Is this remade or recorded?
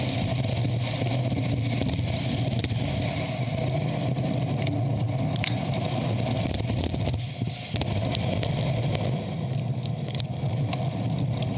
recorded